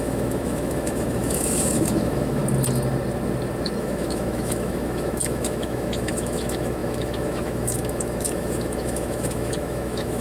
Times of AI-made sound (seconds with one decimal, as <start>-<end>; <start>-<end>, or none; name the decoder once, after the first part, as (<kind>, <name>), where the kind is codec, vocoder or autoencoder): 0.0-2.4 (autoencoder, DAC-VAE); 3.8-10.2